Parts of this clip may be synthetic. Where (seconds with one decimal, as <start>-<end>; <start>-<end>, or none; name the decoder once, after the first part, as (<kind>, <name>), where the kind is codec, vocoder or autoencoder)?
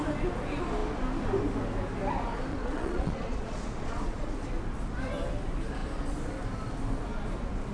2.5-4.3 (vocoder, Vocos)